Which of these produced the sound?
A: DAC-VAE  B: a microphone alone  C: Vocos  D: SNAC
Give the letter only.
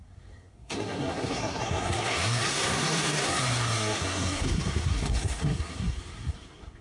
D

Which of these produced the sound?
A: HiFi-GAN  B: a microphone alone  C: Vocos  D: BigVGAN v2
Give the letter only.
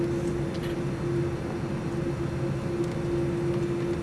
B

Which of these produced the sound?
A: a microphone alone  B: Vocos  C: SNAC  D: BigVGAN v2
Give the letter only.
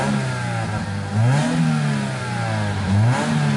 A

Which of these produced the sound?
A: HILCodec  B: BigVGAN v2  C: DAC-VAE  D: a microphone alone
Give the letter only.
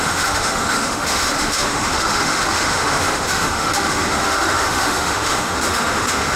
C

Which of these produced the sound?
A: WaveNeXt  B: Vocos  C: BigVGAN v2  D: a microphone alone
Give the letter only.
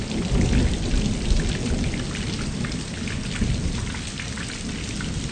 D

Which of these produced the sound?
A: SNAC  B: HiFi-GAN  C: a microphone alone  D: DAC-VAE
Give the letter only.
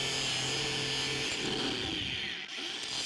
C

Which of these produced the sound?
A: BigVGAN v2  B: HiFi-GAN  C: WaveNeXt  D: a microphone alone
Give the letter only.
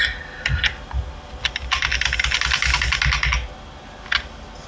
D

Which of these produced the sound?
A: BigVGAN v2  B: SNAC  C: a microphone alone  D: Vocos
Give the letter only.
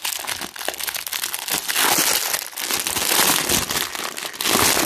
C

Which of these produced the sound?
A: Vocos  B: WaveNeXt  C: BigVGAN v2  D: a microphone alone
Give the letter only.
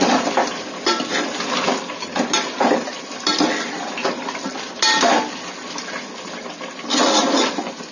D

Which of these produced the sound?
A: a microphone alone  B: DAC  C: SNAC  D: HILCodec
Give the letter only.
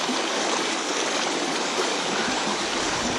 B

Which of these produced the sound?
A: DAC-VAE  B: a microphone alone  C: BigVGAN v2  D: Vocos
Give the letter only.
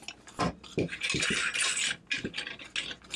B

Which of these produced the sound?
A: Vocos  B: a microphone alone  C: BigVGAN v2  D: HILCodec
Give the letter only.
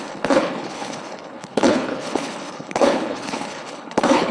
D